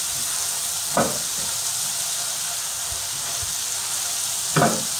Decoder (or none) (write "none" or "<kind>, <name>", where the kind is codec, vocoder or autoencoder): none